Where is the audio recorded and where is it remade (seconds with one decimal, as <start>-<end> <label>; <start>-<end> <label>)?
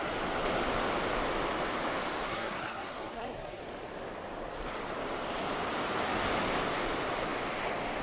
0.0-2.3 recorded; 2.3-3.6 remade; 3.6-8.0 recorded